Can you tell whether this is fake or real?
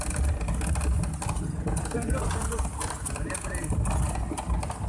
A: real